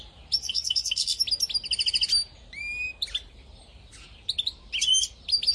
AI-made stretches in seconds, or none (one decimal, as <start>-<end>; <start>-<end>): 0.4-1.2